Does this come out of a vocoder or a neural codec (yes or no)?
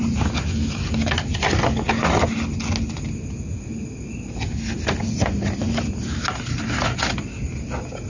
no